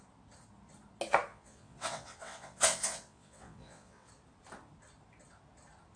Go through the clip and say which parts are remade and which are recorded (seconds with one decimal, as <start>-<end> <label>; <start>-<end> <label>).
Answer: 0.0-1.3 recorded; 1.3-4.1 remade; 4.1-6.0 recorded